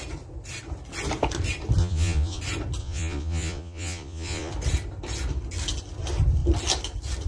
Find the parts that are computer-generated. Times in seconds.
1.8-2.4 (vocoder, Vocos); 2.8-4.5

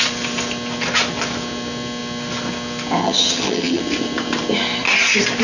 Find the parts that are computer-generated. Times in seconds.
3.0-3.8 (vocoder, HiFi-GAN)

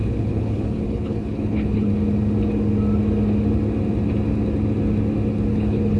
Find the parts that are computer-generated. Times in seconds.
0.0-1.9 (codec, HILCodec); 5.5-6.0

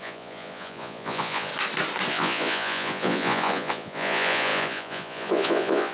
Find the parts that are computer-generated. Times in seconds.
0.0-1.5 (vocoder, Vocos); 2.1-5.9

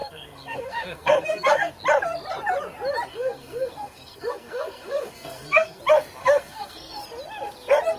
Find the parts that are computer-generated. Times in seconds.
0.0-1.7 (codec, SNAC); 3.1-5.8; 6.2-7.0

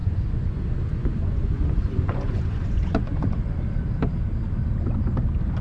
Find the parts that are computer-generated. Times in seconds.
0.0-3.4 (vocoder, Vocos)